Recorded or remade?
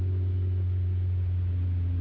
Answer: recorded